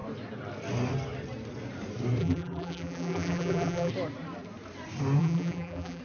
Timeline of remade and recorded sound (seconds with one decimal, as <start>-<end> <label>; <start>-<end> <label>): 0.0-2.2 recorded; 2.2-3.9 remade; 3.9-5.2 recorded; 5.2-6.0 remade